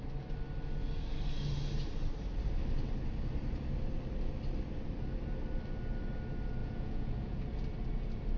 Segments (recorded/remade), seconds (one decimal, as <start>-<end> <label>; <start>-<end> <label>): 0.0-6.6 recorded; 6.6-7.4 remade; 7.4-8.4 recorded

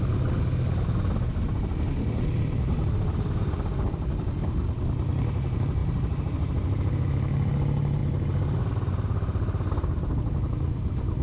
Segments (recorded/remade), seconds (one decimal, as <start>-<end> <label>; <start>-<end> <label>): 0.0-11.2 recorded

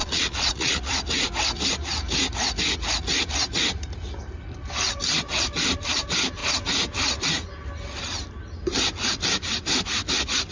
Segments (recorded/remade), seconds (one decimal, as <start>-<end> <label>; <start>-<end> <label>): 0.0-0.9 remade; 0.9-10.5 recorded